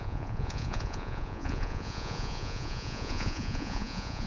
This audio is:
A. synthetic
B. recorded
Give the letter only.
A